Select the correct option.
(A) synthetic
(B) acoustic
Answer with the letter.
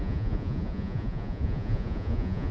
A